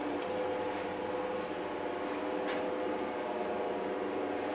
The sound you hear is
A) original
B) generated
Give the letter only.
A